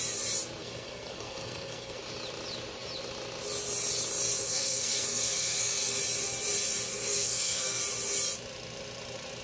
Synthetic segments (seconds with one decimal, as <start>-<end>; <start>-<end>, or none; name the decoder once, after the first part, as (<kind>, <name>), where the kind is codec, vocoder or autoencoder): 0.6-2.0 (codec, SNAC); 4.3-6.0; 6.9-7.8